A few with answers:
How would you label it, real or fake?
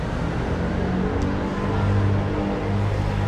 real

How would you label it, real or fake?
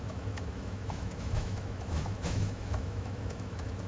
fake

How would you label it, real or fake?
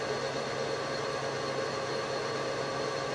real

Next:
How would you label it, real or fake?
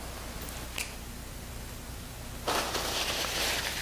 real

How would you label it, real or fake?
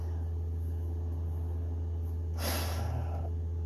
real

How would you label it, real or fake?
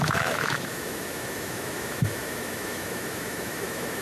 fake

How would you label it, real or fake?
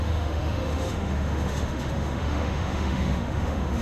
fake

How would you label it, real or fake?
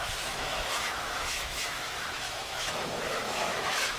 fake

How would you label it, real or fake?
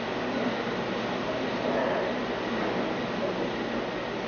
real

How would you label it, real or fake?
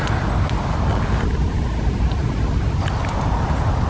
real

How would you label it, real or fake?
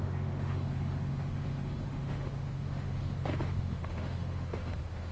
fake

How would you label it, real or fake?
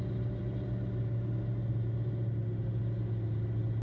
real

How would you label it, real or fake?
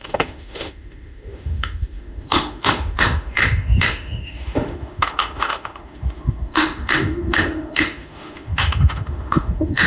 fake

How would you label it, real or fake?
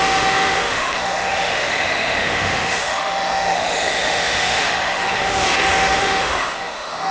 fake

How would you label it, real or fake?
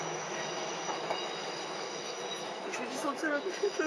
fake